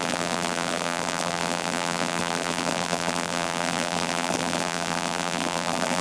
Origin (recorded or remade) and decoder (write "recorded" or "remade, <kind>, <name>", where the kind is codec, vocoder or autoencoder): remade, vocoder, BigVGAN v2